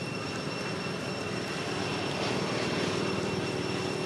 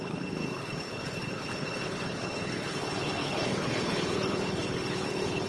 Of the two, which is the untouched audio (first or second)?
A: first